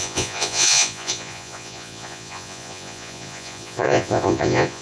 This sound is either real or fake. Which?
fake